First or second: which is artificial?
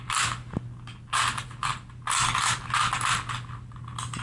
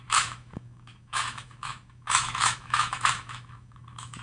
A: second